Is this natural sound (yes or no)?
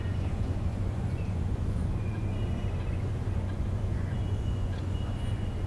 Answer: no